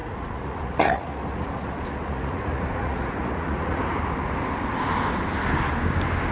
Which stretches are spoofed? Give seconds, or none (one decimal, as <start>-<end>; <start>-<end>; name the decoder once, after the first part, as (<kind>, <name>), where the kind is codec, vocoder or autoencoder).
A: 0.0-3.8 (vocoder, Vocos)